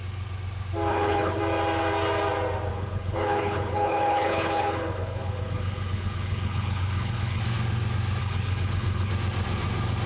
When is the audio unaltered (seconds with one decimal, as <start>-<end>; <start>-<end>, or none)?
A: 0.0-0.9; 1.4-2.7; 7.4-8.2; 9.1-10.1